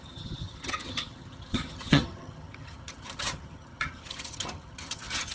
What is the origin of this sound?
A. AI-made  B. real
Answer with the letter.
A